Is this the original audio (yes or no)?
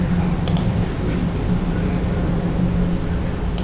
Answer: yes